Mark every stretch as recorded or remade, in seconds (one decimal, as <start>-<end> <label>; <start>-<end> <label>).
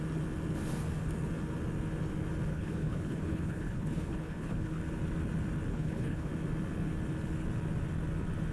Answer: 0.0-2.5 recorded; 2.5-4.8 remade; 4.8-5.7 recorded; 5.7-6.3 remade; 6.3-8.5 recorded